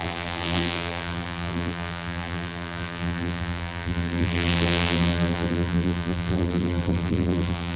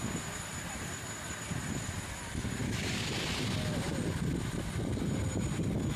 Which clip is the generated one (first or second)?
first